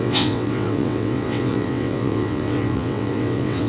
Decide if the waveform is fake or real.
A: fake